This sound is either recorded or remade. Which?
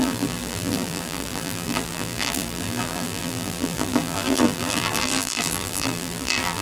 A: remade